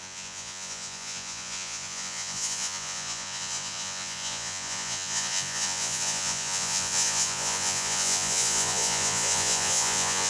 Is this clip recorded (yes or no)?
no